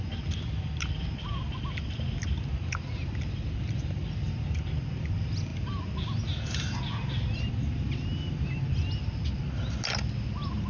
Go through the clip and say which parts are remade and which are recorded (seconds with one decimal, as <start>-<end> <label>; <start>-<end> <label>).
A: 0.0-10.7 recorded